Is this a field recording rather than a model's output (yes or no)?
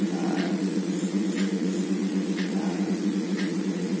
no